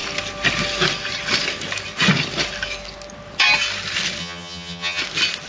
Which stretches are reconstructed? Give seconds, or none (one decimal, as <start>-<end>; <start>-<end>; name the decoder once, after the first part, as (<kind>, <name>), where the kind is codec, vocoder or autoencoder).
4.2-5.0 (vocoder, HiFi-GAN)